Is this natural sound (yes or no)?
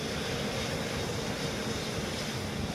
yes